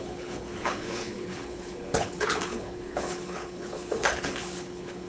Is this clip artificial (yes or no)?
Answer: yes